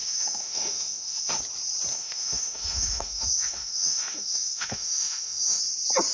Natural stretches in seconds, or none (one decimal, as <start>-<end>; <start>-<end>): 1.4-1.9; 5.6-6.1